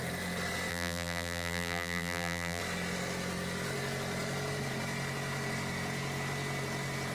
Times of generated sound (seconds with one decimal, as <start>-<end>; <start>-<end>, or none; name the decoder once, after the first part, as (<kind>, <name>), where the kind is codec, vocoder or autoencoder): 0.7-2.6 (vocoder, BigVGAN v2)